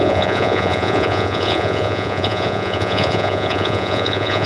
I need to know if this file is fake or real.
fake